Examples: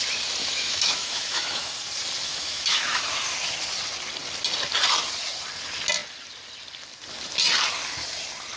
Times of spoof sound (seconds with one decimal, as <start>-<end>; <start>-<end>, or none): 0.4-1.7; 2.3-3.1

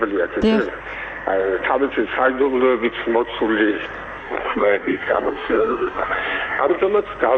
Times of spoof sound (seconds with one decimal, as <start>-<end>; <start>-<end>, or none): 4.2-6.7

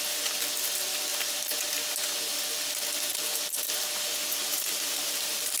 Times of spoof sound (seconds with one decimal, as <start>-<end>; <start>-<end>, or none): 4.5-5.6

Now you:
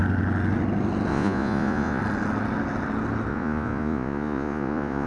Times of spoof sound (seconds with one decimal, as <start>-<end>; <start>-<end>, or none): 1.1-2.0; 3.3-5.1

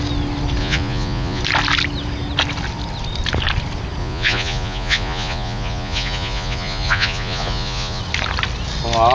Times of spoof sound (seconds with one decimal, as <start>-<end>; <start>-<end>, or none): 0.6-1.4; 4.0-8.0

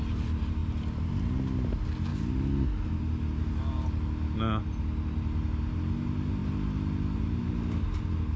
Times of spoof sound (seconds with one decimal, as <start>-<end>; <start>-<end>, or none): none

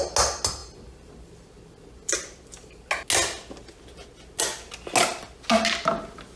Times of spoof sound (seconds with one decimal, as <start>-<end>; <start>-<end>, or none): none

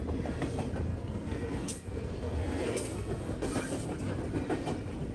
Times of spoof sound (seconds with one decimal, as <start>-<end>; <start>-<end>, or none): 0.9-3.5